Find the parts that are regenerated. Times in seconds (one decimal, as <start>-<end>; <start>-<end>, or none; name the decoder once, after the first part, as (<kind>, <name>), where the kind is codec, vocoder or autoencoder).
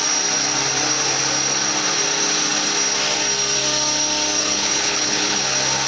4.4-5.4 (codec, HILCodec)